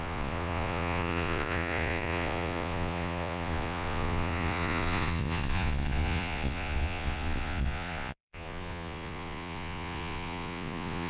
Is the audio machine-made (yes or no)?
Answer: yes